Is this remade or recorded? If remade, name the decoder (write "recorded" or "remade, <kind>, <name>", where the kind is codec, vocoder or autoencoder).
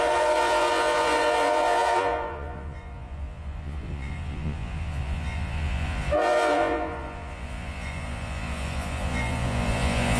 remade, vocoder, Vocos